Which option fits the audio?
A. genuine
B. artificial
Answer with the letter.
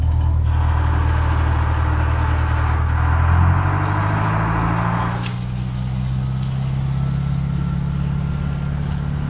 A